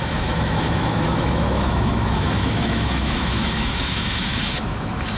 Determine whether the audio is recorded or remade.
remade